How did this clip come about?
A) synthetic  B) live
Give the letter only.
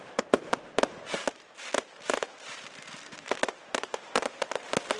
B